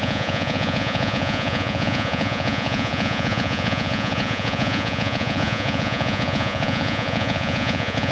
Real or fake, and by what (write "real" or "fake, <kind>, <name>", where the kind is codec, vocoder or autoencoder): fake, vocoder, Vocos